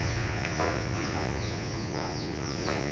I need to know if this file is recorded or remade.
remade